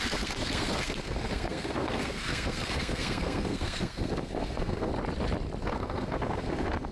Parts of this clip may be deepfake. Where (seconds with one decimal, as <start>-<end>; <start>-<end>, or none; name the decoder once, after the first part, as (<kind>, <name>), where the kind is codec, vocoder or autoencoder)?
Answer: 0.0-4.9 (codec, SNAC); 5.6-6.9